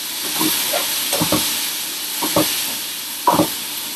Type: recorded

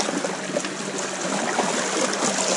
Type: recorded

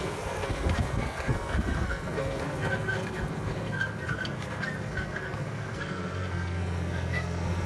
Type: remade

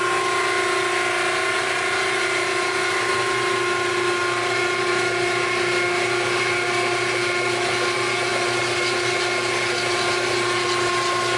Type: recorded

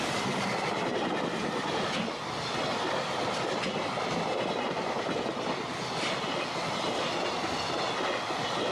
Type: recorded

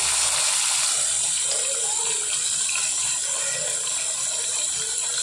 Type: recorded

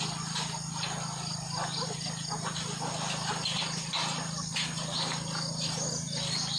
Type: recorded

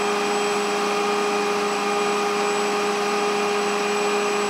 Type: recorded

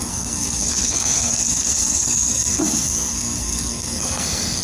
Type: remade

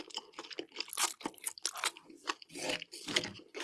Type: recorded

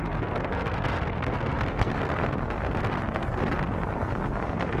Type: remade